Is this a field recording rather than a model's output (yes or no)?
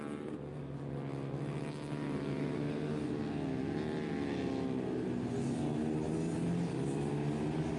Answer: yes